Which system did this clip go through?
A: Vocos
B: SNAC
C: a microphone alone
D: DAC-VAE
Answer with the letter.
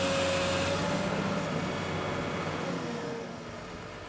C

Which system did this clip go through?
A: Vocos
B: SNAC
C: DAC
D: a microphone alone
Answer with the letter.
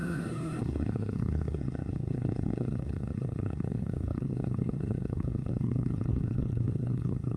B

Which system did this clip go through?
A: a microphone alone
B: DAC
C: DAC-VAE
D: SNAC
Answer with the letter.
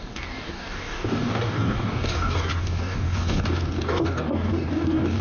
B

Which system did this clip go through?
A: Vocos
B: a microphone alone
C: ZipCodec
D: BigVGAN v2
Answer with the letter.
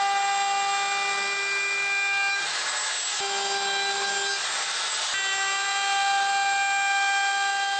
B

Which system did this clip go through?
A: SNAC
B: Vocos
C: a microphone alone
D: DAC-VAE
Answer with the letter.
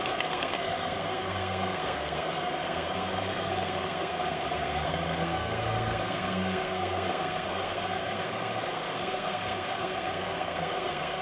A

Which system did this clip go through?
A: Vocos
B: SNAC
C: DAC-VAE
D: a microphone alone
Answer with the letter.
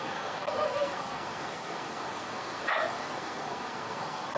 B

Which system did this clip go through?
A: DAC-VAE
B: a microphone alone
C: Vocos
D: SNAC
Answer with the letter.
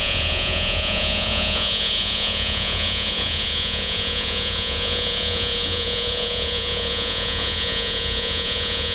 C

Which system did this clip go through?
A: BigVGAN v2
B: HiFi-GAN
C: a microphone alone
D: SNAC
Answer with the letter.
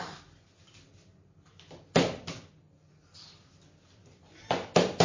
C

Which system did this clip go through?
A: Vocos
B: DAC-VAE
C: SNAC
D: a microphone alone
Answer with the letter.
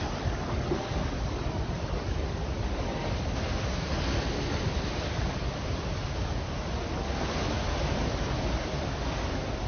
D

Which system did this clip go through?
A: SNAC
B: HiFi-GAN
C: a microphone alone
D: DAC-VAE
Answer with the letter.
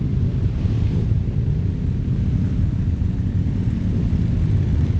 C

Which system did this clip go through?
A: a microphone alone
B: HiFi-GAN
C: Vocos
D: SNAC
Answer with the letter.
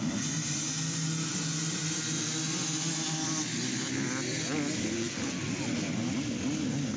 A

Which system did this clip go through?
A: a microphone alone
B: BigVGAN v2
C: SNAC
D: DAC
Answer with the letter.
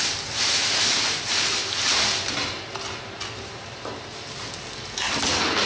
A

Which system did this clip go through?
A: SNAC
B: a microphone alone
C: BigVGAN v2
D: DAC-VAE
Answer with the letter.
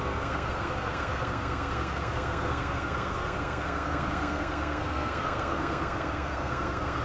A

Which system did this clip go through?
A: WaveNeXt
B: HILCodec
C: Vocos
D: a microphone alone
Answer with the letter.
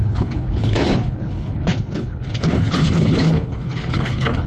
B